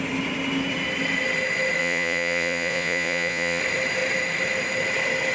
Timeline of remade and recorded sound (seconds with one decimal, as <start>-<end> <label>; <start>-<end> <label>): 0.0-1.8 recorded; 1.8-3.6 remade; 3.6-5.3 recorded